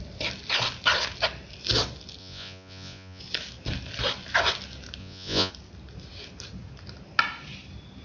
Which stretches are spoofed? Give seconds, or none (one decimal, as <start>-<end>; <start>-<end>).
2.2-3.2; 5.0-5.5